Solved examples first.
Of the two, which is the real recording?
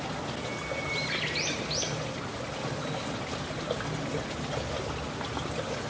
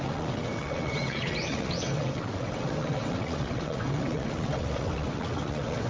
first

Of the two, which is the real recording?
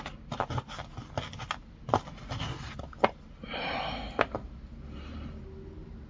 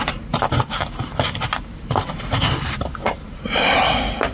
first